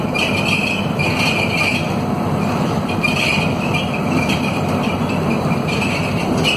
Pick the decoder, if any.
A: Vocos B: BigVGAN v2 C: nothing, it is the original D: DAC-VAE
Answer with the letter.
C